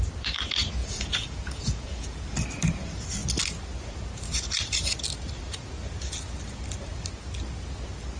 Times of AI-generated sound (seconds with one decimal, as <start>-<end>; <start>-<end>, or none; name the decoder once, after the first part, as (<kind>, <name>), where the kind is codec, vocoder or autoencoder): 0.8-2.3 (vocoder, Vocos)